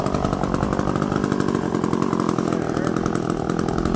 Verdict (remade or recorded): recorded